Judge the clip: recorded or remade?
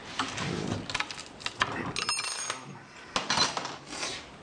recorded